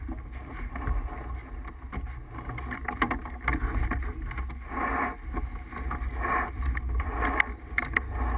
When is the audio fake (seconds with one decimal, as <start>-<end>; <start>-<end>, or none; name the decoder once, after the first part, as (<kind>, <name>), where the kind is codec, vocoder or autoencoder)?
none